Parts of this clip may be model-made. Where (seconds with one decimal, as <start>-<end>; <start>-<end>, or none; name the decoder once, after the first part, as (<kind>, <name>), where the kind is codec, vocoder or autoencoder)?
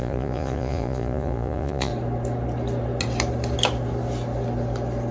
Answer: 0.0-1.9 (vocoder, Vocos)